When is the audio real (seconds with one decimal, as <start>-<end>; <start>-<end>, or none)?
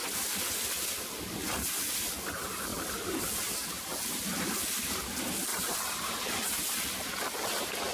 0.0-5.5; 6.6-7.9